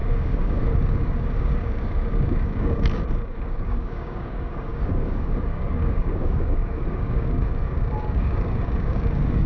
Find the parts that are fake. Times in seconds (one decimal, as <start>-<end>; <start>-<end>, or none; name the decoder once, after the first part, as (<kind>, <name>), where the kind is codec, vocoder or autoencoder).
0.0-9.5 (codec, DAC)